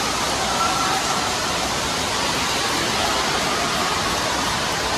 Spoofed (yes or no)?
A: no